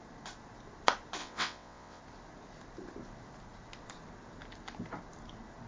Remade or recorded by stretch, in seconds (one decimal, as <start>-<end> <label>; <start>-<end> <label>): 0.0-1.2 recorded; 1.2-2.0 remade; 2.0-5.7 recorded